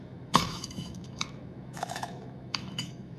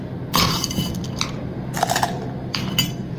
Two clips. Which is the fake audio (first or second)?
first